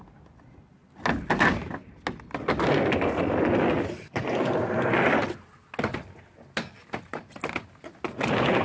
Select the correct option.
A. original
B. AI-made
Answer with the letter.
A